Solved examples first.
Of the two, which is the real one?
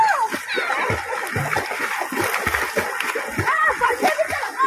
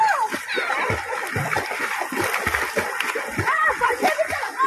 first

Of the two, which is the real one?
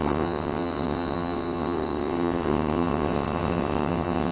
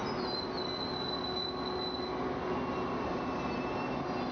second